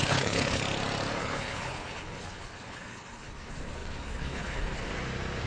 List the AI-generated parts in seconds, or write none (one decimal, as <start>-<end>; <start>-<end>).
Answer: 0.0-0.6; 1.2-4.9